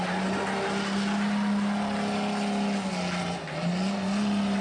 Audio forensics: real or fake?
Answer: real